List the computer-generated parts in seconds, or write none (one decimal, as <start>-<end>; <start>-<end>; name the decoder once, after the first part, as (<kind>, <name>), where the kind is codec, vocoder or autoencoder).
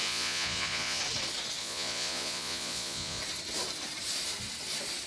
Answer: 0.0-1.0 (vocoder, Vocos); 1.6-3.2